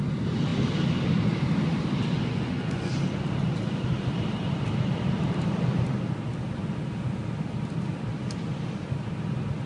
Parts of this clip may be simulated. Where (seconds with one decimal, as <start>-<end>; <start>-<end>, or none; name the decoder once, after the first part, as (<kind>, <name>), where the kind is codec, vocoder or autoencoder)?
2.3-2.9 (vocoder, Vocos)